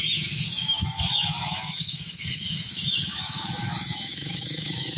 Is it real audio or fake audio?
fake